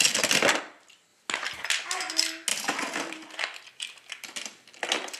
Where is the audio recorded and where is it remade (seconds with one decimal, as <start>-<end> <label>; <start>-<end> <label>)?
0.0-2.5 recorded; 2.5-5.2 remade